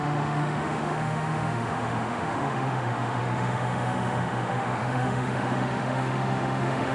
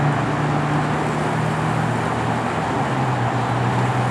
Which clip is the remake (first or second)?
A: first